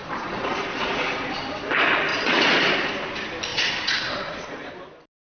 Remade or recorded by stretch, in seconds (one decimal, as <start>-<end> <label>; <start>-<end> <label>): 0.0-1.6 remade; 1.6-2.1 recorded; 2.1-2.9 remade; 2.9-3.5 recorded; 3.5-4.7 remade; 4.7-5.4 recorded